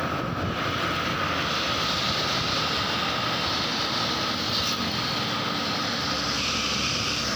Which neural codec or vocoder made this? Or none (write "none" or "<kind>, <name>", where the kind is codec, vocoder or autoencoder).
none